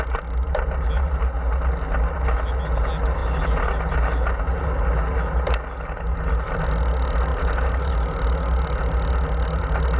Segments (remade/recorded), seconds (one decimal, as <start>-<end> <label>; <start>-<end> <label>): 0.0-7.3 recorded; 7.3-7.9 remade; 7.9-10.0 recorded